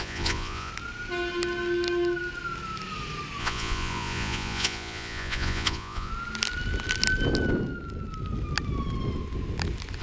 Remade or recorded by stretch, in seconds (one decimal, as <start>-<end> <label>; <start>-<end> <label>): 0.0-0.7 remade; 0.7-3.4 recorded; 3.4-6.1 remade; 6.1-10.0 recorded